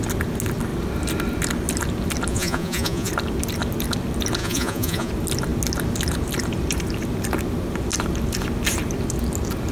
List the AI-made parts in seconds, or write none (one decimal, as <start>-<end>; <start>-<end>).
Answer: 2.3-3.1; 4.4-5.1